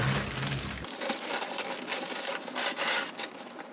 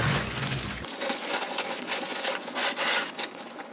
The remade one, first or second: second